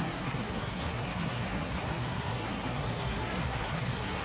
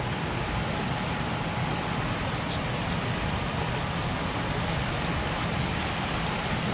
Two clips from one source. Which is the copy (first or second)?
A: first